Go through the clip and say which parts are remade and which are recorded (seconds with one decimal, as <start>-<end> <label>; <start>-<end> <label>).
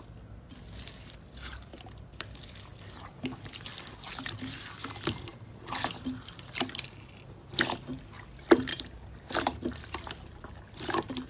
0.0-8.7 recorded; 8.7-9.7 remade; 9.7-11.3 recorded